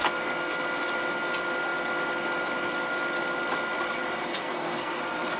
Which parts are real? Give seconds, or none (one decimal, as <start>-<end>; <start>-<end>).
0.0-4.3; 5.0-5.4